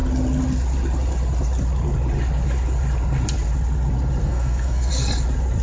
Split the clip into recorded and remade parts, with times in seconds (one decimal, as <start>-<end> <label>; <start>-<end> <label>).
0.0-4.2 recorded; 4.2-4.9 remade; 4.9-5.6 recorded